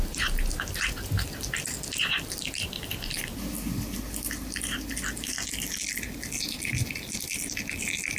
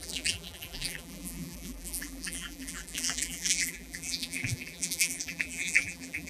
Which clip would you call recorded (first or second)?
first